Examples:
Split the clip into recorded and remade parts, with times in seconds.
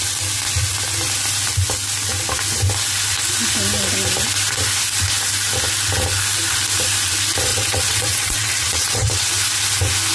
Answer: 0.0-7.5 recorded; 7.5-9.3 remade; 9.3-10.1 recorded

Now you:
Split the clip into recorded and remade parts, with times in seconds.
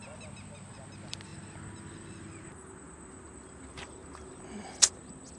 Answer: 0.0-5.4 recorded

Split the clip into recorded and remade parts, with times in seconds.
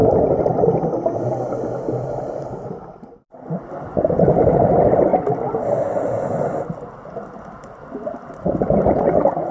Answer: 0.0-9.5 recorded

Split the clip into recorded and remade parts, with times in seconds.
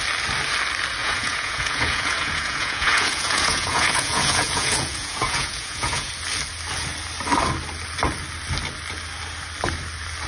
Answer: 0.0-1.0 recorded; 1.0-6.1 remade; 6.1-10.3 recorded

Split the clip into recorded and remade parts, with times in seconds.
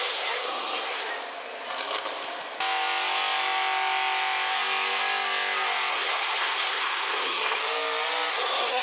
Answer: 0.0-1.1 remade; 1.1-5.9 recorded; 5.9-7.6 remade; 7.6-8.3 recorded; 8.3-8.8 remade